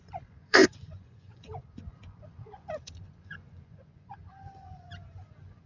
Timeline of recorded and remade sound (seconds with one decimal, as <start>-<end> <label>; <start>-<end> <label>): 0.0-5.7 remade